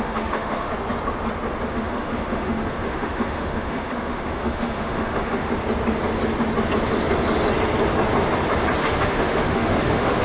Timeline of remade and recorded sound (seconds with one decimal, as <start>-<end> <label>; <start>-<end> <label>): 0.0-0.7 remade; 0.7-1.7 recorded; 1.7-5.5 remade; 5.5-8.8 recorded; 8.8-10.2 remade